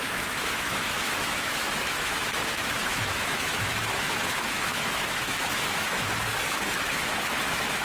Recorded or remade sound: remade